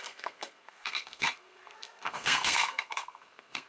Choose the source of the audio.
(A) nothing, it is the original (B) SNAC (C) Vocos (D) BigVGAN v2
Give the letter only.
B